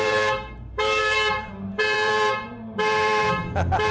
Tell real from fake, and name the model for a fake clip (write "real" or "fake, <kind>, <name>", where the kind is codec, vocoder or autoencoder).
fake, vocoder, BigVGAN v2